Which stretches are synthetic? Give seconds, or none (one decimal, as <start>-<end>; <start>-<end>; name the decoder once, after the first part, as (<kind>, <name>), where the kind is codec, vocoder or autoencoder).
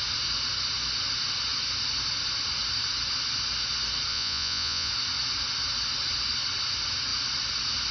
4.1-4.9 (vocoder, Vocos)